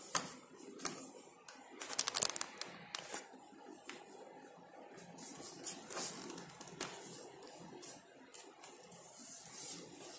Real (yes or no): yes